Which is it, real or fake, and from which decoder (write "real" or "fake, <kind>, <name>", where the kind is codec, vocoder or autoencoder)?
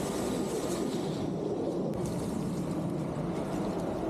real